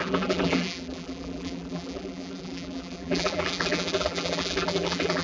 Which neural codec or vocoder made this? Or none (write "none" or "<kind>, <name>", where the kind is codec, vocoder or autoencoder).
vocoder, BigVGAN v2